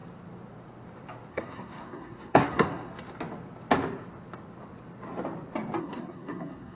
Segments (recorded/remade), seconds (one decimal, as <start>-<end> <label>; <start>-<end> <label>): 0.0-1.3 recorded; 1.3-2.9 remade; 2.9-5.8 recorded; 5.8-6.8 remade